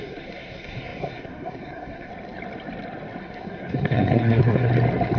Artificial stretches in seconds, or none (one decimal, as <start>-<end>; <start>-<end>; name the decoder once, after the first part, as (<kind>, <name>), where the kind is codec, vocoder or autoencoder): 0.0-2.1 (codec, SNAC); 3.2-4.7

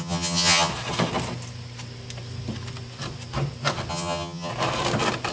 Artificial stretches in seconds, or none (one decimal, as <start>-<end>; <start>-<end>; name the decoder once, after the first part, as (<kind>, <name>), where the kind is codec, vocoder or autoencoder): 0.0-0.7 (vocoder, HiFi-GAN); 3.9-4.5

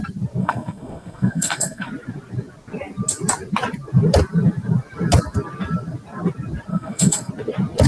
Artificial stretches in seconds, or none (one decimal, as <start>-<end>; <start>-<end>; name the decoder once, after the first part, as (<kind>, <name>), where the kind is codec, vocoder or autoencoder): 0.4-1.9 (codec, SNAC); 6.7-7.3

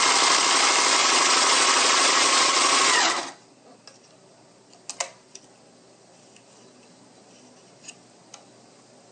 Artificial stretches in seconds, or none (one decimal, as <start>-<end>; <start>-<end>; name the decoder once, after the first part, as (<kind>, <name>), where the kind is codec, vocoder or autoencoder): 1.0-3.1 (vocoder, Vocos)